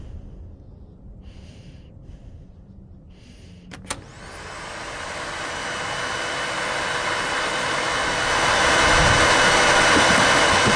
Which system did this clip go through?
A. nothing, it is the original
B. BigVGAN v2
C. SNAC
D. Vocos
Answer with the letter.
A